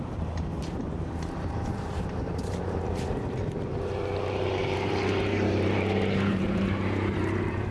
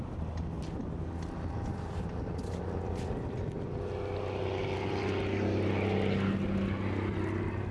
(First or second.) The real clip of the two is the second